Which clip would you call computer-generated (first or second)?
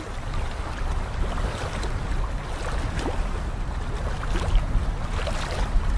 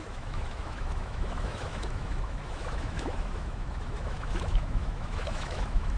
second